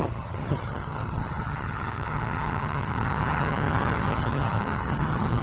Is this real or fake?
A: fake